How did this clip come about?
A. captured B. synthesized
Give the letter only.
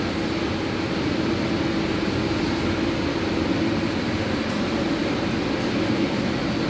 A